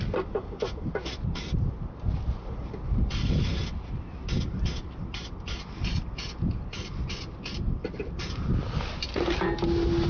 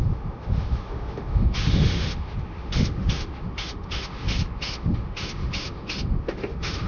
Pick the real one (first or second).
first